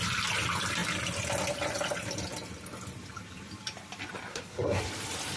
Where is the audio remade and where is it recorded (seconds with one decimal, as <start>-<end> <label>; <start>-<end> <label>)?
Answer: 0.0-4.3 recorded; 4.3-4.8 remade; 4.8-5.4 recorded